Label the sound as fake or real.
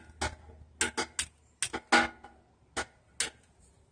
real